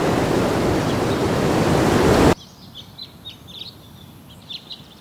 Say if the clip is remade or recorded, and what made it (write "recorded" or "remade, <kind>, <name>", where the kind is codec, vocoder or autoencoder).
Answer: remade, vocoder, BigVGAN v2